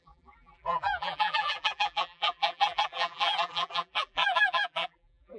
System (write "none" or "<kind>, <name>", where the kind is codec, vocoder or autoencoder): vocoder, BigVGAN v2